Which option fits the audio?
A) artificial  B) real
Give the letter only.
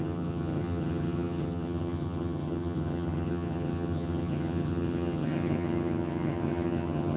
A